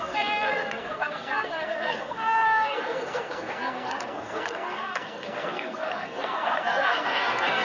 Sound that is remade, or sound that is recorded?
remade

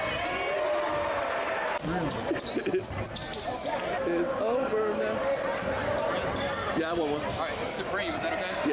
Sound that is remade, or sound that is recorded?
recorded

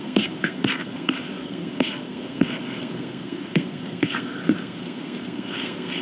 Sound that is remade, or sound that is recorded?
remade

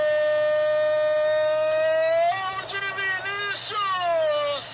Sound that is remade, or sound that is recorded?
recorded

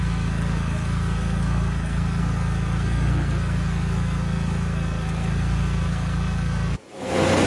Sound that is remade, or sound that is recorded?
remade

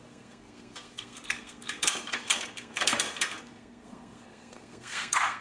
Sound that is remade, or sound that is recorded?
remade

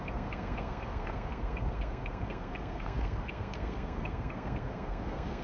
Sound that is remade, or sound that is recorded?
remade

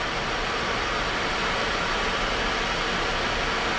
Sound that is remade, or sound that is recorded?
recorded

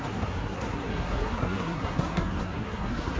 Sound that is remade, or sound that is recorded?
remade